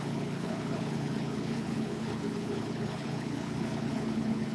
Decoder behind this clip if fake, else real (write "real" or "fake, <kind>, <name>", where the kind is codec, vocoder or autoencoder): fake, codec, HILCodec